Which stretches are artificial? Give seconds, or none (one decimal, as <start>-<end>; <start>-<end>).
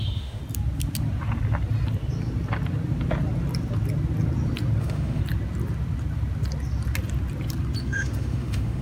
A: 0.0-0.4; 4.8-5.2; 7.8-8.8